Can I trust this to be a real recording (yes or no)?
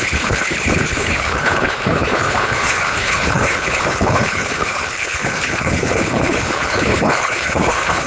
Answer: no